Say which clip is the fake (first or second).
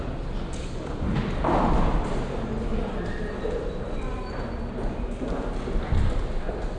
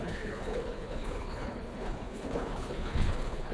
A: second